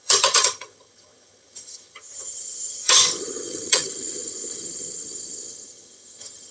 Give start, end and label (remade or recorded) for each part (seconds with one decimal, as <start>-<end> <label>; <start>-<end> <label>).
0.0-6.5 remade